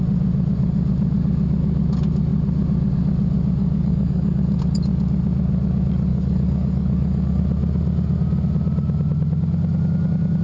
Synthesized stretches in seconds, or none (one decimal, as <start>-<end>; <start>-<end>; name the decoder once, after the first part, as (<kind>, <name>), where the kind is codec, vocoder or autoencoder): 3.6-4.6 (codec, DAC); 6.1-7.4